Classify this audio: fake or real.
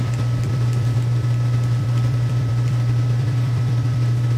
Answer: fake